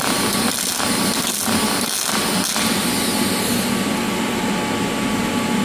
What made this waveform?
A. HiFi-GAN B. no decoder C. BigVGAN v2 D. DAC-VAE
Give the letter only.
B